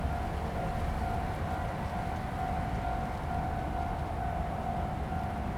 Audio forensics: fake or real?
real